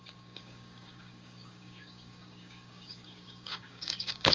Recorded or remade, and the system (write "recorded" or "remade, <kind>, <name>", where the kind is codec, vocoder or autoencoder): remade, codec, DAC